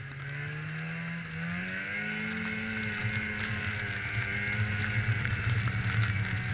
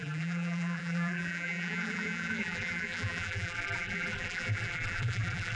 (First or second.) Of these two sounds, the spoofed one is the second